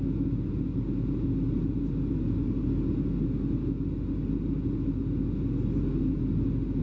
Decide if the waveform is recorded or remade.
recorded